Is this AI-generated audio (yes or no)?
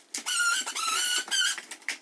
no